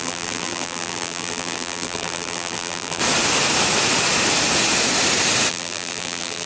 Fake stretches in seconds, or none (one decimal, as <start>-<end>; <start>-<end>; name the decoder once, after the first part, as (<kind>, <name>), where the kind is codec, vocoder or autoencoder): 0.0-3.0 (vocoder, BigVGAN v2); 5.5-6.5